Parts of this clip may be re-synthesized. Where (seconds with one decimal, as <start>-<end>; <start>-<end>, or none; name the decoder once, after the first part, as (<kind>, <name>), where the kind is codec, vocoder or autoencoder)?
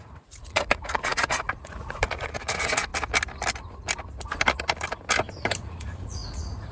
0.0-2.9 (vocoder, Vocos); 5.6-6.7